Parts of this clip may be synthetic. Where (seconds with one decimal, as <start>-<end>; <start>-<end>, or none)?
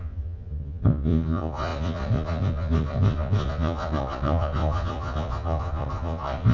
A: 0.0-6.5